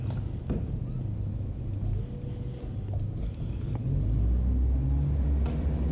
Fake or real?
real